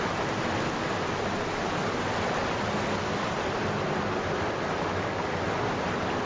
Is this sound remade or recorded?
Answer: recorded